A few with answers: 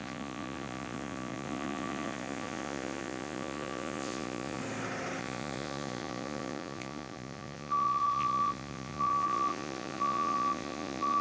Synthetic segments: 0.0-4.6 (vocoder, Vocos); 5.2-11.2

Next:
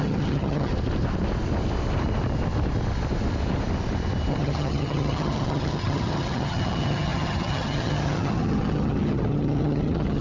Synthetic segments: 0.0-0.7 (vocoder, HiFi-GAN); 4.3-10.2

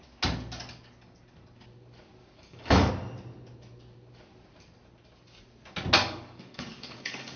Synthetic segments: 2.2-2.9 (codec, DAC); 6.0-7.4

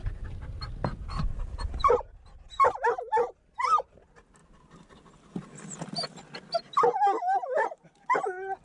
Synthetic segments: none

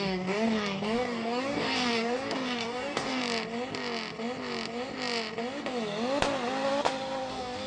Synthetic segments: 0.0-3.2 (codec, DAC); 7.3-7.7

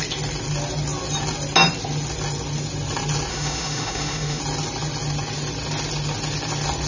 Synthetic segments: 3.3-4.4 (autoencoder, DAC-VAE)